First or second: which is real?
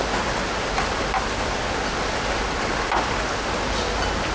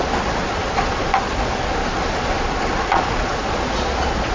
first